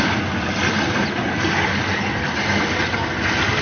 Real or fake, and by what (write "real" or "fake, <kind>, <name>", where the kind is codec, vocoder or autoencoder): real